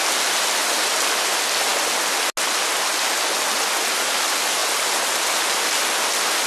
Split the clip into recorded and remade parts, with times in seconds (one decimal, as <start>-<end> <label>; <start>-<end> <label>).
0.0-0.6 recorded; 0.6-1.1 remade; 1.1-6.5 recorded